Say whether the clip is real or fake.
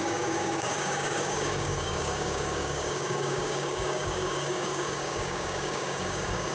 fake